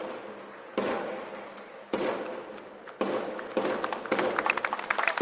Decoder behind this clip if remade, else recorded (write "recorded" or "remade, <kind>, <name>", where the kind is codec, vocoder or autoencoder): recorded